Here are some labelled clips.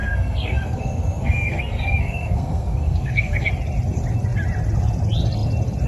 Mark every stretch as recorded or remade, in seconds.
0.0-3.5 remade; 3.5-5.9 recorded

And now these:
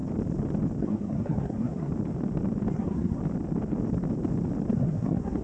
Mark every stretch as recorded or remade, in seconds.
0.0-0.8 recorded; 0.8-1.9 remade; 1.9-2.7 recorded; 2.7-3.2 remade; 3.2-4.7 recorded; 4.7-5.4 remade

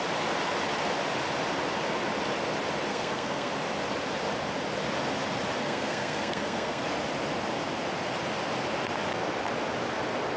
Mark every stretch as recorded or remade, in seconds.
0.0-2.9 recorded; 2.9-3.5 remade; 3.5-5.6 recorded; 5.6-6.8 remade; 6.8-10.4 recorded

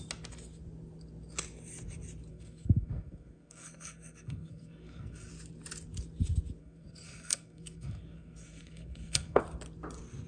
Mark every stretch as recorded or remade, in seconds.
0.0-2.3 recorded; 2.3-5.3 remade; 5.3-6.6 recorded; 6.6-9.4 remade; 9.4-10.3 recorded

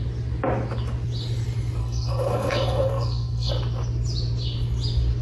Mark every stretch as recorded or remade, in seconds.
0.0-1.8 recorded; 1.8-3.5 remade; 3.5-5.2 recorded

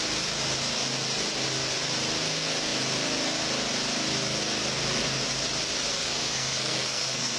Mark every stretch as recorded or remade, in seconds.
0.0-5.9 recorded; 5.9-7.4 remade

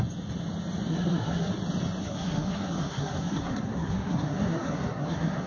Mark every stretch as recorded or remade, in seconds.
0.0-0.9 recorded; 0.9-1.5 remade; 1.5-2.0 recorded; 2.0-5.5 remade